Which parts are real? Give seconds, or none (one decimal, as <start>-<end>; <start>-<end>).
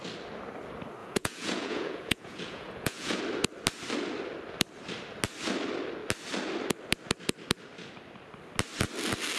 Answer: 0.0-1.0; 3.2-9.4